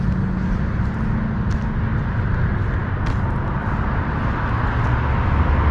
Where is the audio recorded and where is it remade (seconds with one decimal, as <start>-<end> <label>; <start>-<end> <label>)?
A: 0.0-1.9 recorded; 1.9-2.4 remade; 2.4-5.7 recorded